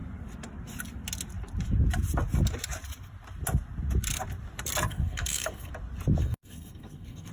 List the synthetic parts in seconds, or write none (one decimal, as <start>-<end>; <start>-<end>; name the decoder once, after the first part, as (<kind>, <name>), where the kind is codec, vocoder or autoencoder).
4.9-5.7 (codec, SNAC); 6.2-7.3